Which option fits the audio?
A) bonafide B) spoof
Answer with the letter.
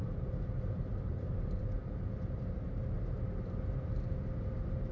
A